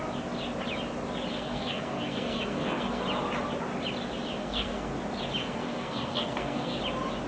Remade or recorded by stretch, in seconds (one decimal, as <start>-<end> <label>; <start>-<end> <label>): 0.0-1.3 recorded; 1.3-3.0 remade; 3.0-4.4 recorded; 4.4-4.9 remade; 4.9-5.4 recorded; 5.4-6.8 remade; 6.8-7.3 recorded